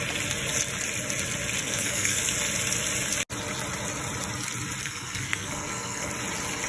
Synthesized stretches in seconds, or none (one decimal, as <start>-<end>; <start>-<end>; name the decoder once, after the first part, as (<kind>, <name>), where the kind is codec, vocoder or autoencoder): 1.6-2.2 (codec, SNAC); 4.8-6.1